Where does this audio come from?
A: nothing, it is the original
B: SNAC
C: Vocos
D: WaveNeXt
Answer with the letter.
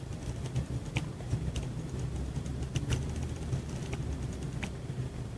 A